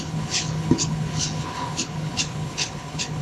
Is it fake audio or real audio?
fake